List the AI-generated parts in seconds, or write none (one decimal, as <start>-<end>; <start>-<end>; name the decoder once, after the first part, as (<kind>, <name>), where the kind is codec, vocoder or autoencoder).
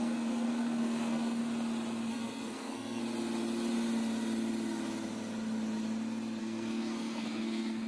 0.0-1.4 (codec, SNAC); 2.1-3.0; 6.4-7.9